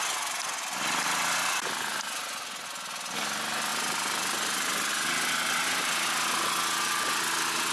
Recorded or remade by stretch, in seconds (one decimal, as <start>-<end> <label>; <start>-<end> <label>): 0.0-7.7 recorded